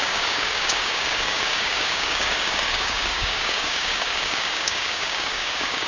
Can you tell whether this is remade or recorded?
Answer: remade